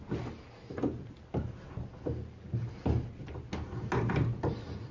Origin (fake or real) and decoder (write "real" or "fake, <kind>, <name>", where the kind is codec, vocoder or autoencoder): real